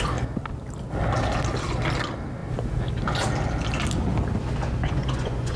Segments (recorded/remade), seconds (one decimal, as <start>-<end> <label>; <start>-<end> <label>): 0.0-4.8 recorded; 4.8-5.6 remade